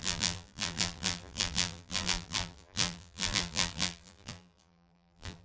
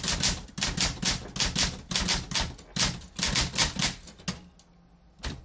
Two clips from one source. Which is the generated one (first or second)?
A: first